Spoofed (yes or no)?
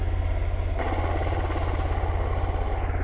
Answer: no